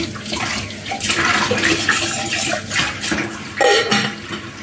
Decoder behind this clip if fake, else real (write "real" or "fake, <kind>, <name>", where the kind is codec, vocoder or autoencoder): real